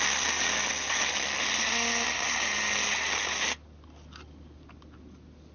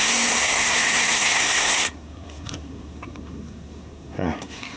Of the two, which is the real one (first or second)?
first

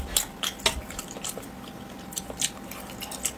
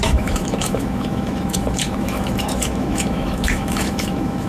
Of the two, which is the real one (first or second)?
first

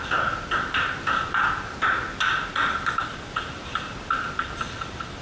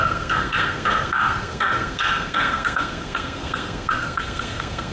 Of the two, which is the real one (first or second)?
first